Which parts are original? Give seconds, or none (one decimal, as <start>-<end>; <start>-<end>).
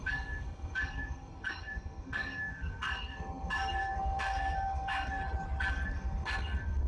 5.2-5.7